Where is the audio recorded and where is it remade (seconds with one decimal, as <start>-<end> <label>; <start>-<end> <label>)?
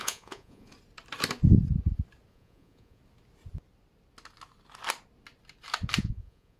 0.0-0.7 remade; 0.7-2.3 recorded; 2.3-3.0 remade; 3.0-6.0 recorded; 6.0-6.6 remade